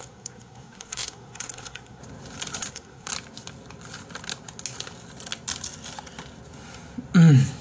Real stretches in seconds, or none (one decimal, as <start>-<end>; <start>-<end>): 2.0-2.7; 3.1-7.6